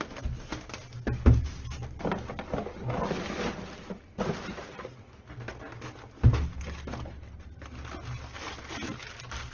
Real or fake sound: real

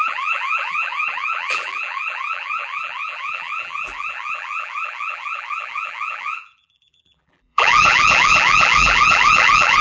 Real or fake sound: fake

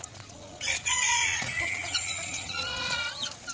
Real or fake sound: fake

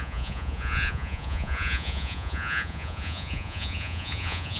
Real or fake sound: fake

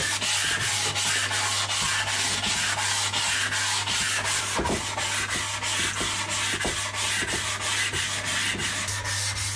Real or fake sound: real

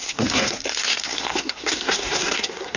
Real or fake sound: fake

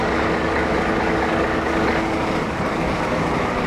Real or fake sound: fake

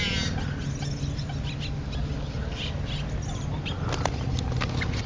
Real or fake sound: real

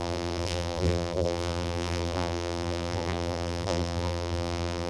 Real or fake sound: fake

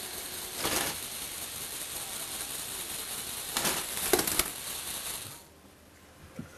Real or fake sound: real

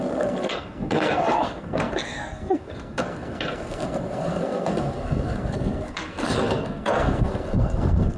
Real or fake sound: fake